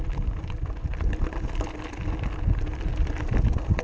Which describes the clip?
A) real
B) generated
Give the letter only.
A